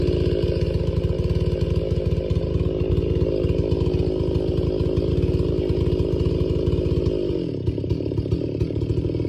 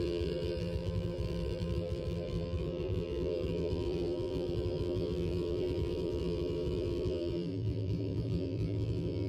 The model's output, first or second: second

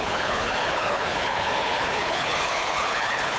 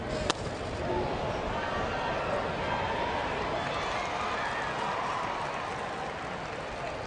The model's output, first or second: first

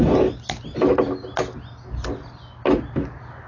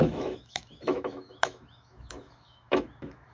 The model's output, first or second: second